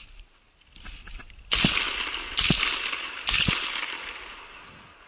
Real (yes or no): yes